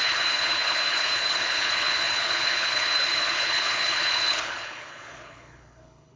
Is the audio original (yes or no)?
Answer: no